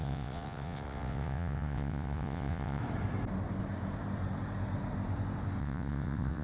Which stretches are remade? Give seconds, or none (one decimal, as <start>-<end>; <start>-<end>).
0.0-2.8; 5.6-6.4